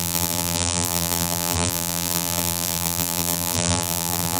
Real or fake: fake